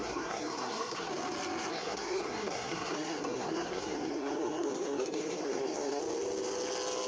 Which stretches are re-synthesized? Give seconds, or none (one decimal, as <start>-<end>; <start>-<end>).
0.0-1.1; 1.7-6.0